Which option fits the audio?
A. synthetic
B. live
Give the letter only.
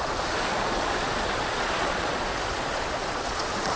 A